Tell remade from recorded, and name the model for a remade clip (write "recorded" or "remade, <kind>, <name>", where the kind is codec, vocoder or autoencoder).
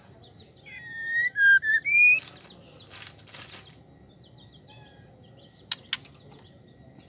recorded